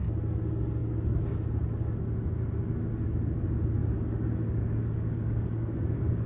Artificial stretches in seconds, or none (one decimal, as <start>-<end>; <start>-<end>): 3.8-6.3